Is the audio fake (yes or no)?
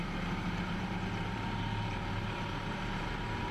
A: yes